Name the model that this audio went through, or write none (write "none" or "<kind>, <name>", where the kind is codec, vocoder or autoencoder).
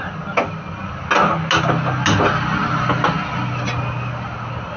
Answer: none